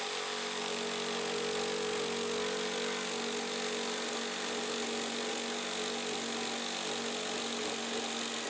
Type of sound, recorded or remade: recorded